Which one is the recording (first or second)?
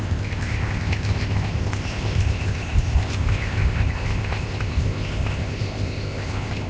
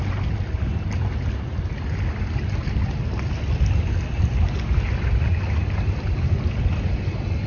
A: second